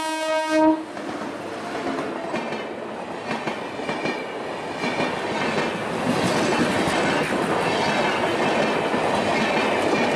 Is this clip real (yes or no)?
yes